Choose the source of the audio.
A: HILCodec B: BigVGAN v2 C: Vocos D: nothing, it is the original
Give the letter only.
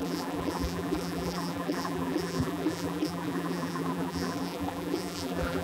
B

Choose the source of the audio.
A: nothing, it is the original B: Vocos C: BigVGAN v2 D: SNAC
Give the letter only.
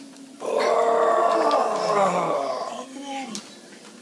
A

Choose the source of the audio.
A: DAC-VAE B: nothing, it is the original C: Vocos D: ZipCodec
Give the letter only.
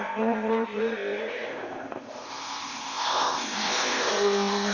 D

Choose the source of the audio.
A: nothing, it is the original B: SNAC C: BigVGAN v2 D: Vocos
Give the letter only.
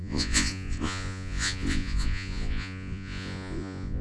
D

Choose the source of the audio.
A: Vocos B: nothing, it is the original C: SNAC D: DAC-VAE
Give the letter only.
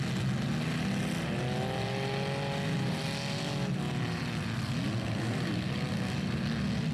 B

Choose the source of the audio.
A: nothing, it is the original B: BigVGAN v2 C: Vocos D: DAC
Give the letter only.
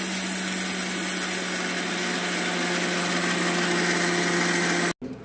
A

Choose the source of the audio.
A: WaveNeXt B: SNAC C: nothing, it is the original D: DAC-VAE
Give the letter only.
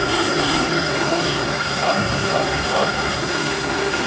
B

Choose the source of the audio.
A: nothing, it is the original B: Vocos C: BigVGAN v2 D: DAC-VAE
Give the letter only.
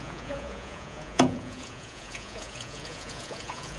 B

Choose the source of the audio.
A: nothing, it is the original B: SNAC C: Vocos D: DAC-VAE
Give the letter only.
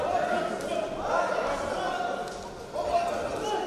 A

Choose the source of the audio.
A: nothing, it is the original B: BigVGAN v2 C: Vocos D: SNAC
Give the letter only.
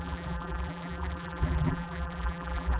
B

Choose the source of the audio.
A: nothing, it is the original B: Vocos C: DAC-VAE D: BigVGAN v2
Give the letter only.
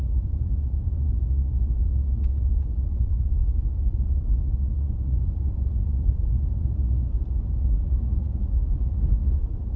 B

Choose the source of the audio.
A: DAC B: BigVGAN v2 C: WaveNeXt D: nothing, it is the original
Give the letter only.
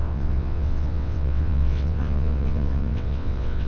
C